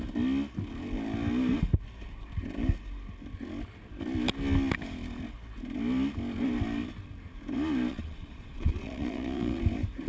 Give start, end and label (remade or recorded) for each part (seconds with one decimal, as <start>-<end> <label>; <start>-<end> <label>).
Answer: 0.0-7.9 recorded; 7.9-9.6 remade; 9.6-10.1 recorded